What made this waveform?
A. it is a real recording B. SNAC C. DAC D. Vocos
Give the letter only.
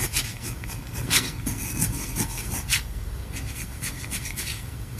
B